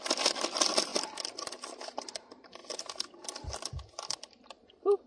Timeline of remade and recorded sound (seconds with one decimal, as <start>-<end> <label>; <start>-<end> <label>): 0.0-5.1 recorded